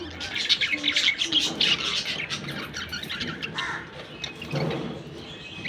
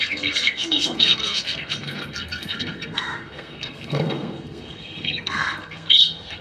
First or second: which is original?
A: first